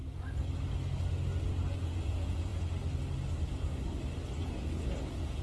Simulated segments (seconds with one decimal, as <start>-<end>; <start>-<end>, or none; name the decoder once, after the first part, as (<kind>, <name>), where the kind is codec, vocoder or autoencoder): 1.8-2.5 (vocoder, Vocos); 4.4-5.4